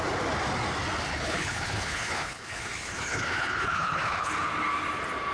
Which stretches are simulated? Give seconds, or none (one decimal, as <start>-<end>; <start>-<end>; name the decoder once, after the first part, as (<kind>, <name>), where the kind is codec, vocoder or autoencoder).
1.1-4.3 (codec, HILCodec)